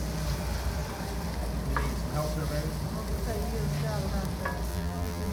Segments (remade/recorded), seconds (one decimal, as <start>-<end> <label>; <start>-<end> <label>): 0.0-4.7 recorded; 4.7-5.3 remade